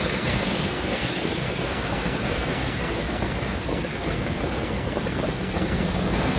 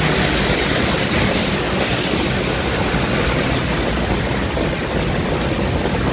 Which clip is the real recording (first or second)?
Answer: second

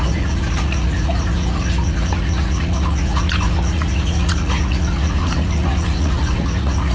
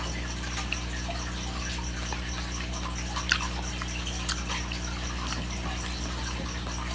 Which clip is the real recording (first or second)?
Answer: second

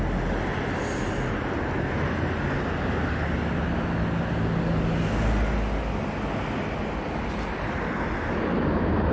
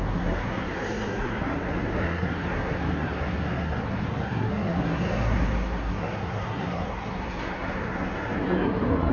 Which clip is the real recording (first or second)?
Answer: first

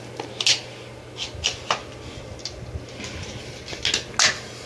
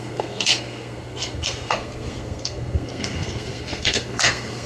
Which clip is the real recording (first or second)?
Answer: first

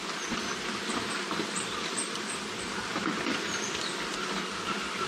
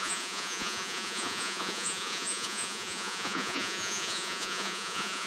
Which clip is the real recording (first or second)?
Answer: first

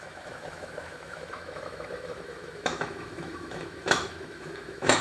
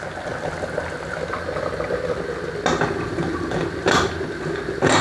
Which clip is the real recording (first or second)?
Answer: second